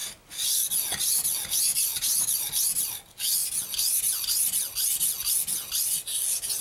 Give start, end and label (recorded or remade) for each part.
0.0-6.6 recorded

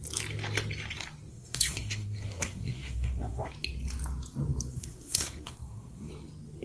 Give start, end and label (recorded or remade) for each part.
0.0-1.3 recorded; 1.3-3.5 remade; 3.5-4.7 recorded; 4.7-6.1 remade; 6.1-6.6 recorded

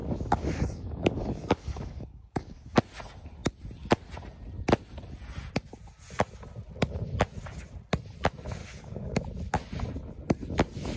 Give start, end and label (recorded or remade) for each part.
0.0-2.8 remade; 2.8-8.6 recorded; 8.6-9.2 remade; 9.2-11.0 recorded

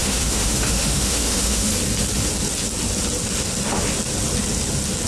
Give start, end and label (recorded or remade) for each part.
0.0-1.7 remade; 1.7-5.1 recorded

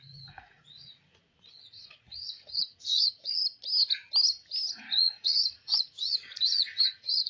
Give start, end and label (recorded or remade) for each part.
0.0-3.4 remade; 3.4-4.7 recorded; 4.7-7.3 remade

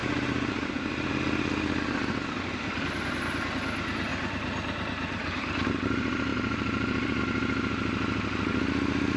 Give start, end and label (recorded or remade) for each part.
0.0-1.1 remade; 1.1-4.1 recorded; 4.1-5.4 remade; 5.4-6.3 recorded; 6.3-7.2 remade; 7.2-9.2 recorded